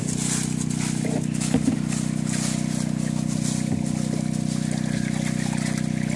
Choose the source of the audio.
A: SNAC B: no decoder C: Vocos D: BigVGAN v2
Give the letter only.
B